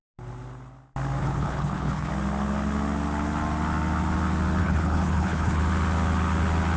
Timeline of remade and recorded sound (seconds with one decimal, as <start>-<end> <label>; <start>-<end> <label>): 0.0-1.2 recorded; 1.2-2.1 remade; 2.1-4.6 recorded; 4.6-5.6 remade; 5.6-6.8 recorded